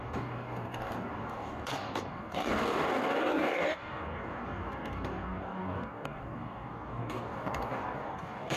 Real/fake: fake